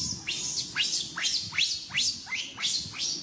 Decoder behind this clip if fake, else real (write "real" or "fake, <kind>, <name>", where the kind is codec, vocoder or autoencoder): real